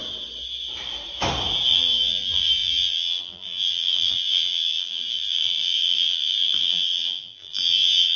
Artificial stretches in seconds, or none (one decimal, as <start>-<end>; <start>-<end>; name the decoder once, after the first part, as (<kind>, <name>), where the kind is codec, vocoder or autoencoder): 1.7-8.2 (vocoder, BigVGAN v2)